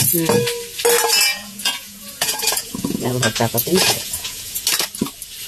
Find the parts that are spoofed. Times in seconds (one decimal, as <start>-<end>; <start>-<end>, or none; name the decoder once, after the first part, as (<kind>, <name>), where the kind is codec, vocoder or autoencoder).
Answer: 1.3-4.6 (vocoder, Vocos)